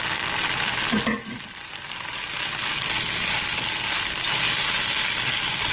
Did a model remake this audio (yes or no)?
no